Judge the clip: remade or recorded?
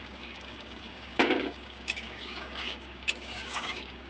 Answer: remade